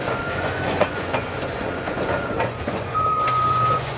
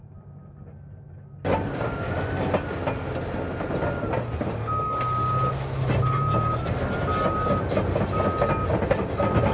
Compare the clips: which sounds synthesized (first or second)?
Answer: first